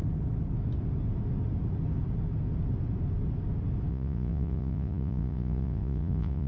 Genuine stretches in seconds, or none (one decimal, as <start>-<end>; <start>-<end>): 0.0-3.9